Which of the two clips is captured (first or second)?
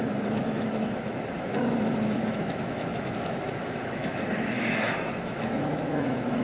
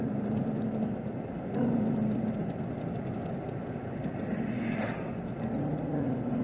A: second